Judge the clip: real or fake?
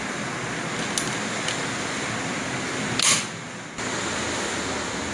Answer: real